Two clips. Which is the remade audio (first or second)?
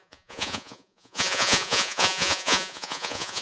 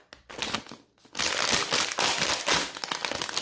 first